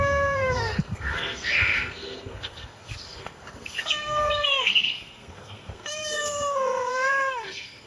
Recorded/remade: remade